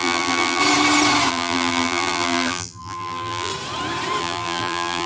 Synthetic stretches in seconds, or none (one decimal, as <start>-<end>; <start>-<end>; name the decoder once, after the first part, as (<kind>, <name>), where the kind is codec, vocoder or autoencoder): 0.0-0.6 (vocoder, BigVGAN v2); 1.3-3.5; 4.2-5.1